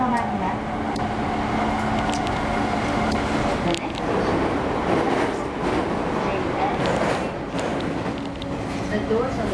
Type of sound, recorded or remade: recorded